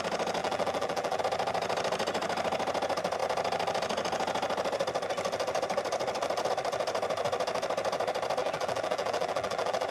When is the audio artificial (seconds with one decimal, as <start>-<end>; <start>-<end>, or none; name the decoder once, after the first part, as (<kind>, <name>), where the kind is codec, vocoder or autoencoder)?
0.4-1.2 (vocoder, BigVGAN v2); 8.4-9.9